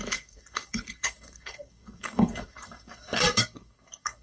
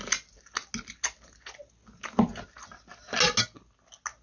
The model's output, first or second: first